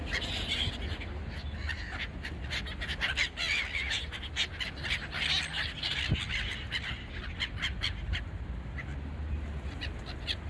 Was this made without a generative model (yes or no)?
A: yes